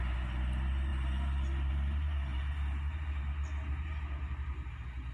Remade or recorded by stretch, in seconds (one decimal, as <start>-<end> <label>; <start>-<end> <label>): 0.0-5.1 recorded